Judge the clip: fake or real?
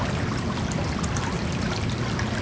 real